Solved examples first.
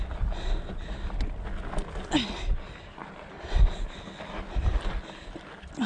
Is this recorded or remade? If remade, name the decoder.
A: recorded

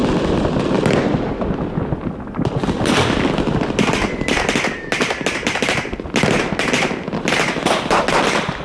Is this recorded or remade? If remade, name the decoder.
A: recorded